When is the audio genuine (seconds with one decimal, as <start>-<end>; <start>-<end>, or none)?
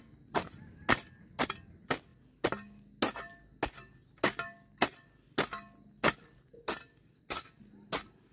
0.0-8.3